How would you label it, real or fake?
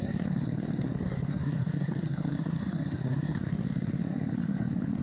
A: fake